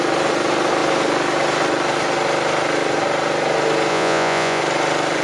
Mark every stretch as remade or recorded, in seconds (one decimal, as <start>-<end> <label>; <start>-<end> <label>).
0.0-3.9 recorded; 3.9-4.6 remade; 4.6-5.2 recorded